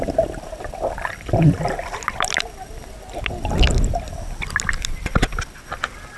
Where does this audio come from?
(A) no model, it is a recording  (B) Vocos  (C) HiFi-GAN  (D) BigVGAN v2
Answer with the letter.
A